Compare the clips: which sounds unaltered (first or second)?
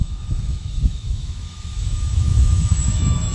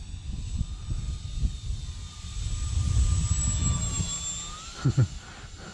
second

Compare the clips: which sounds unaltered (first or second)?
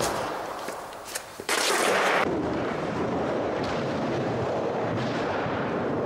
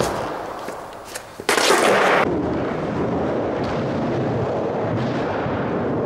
second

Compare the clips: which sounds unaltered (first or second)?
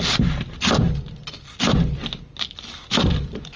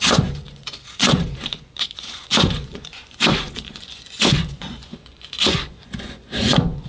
first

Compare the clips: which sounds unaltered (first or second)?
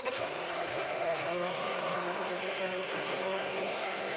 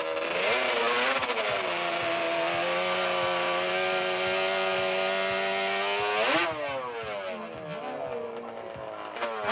second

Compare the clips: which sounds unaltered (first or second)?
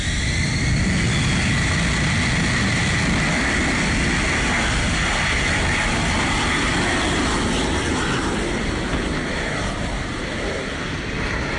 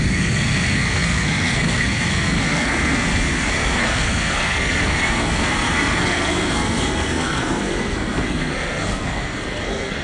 first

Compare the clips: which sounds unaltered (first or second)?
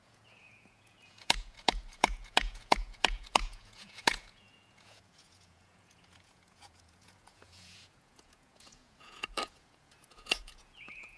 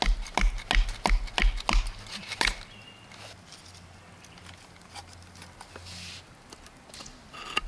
second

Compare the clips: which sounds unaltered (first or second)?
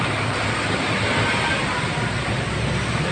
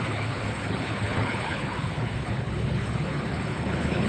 first